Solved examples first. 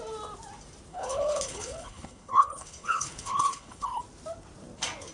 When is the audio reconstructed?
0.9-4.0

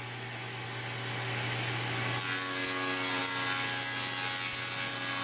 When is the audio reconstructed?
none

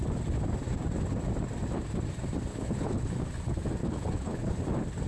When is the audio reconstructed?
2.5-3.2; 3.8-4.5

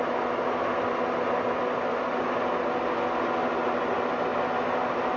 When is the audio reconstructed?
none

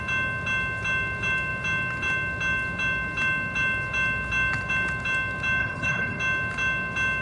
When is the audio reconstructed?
5.6-6.2

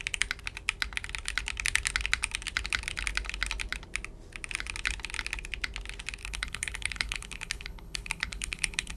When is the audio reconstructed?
6.2-9.0